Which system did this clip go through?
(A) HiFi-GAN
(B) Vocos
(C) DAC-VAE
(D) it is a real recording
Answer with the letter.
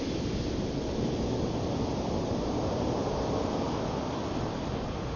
D